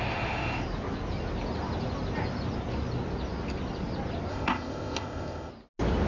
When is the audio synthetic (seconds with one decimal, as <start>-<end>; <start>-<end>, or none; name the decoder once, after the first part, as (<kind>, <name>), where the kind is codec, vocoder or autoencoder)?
4.3-5.5 (codec, ZipCodec)